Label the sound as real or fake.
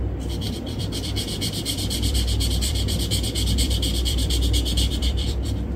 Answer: fake